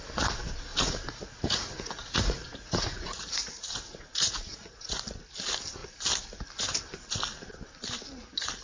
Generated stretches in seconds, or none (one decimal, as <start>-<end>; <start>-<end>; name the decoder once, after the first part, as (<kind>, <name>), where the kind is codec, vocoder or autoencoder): 0.7-5.0 (vocoder, Vocos)